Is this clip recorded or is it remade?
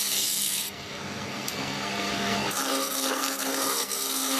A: remade